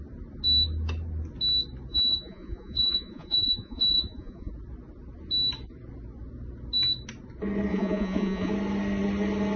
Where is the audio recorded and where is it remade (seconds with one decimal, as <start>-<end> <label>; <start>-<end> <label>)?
0.0-1.9 recorded; 1.9-4.5 remade; 4.5-7.7 recorded; 7.7-8.5 remade; 8.5-9.6 recorded